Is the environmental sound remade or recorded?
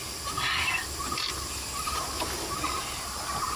recorded